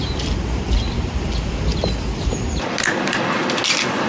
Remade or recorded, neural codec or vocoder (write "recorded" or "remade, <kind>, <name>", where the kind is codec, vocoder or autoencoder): recorded